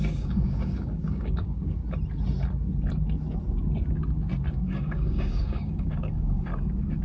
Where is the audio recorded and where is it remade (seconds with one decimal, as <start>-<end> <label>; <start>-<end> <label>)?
0.0-1.8 remade; 1.8-4.5 recorded; 4.5-6.5 remade; 6.5-7.0 recorded